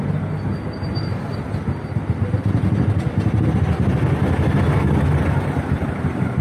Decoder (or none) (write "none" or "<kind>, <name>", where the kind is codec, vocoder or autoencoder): none